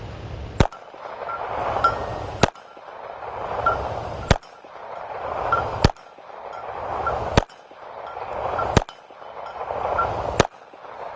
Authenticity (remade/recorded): recorded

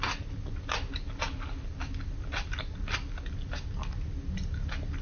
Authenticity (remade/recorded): recorded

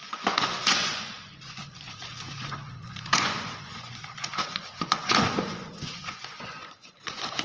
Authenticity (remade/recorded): remade